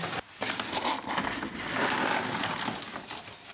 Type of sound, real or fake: real